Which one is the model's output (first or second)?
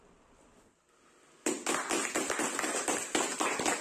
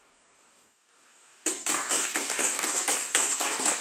second